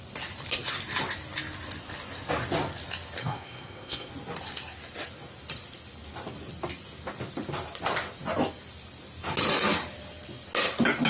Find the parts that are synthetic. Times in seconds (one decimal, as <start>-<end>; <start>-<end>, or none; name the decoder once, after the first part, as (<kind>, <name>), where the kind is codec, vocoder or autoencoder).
3.2-4.1 (codec, SNAC)

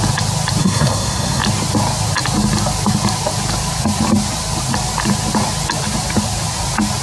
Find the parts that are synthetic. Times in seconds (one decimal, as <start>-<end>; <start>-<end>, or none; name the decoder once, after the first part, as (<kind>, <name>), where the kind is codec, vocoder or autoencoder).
0.6-1.4 (codec, SNAC)

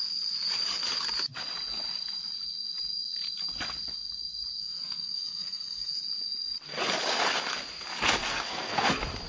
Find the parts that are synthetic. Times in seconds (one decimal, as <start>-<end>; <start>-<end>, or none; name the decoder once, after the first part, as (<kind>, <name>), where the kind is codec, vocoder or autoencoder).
4.6-6.0 (codec, SNAC); 8.3-8.9

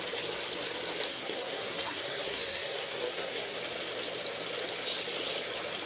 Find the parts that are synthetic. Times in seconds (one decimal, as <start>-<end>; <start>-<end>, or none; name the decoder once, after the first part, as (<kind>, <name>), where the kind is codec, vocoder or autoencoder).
1.1-3.6 (codec, SNAC)